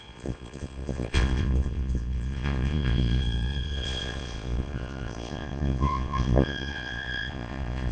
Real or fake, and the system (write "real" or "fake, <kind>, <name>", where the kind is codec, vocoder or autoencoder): fake, vocoder, Vocos